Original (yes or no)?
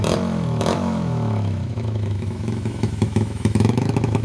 no